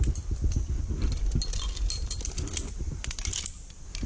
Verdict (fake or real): real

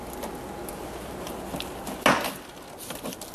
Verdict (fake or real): real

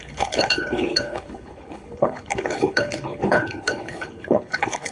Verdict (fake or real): fake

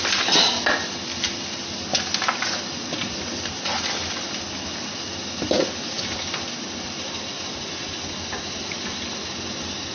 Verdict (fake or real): real